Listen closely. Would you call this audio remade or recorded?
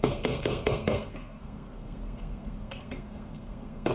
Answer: remade